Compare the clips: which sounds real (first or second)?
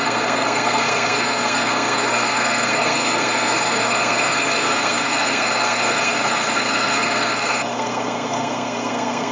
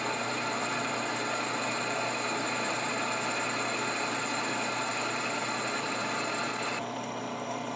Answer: second